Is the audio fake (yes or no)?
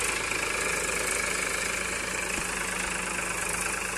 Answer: no